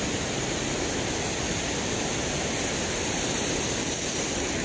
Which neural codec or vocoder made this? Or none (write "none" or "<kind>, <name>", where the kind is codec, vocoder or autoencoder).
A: none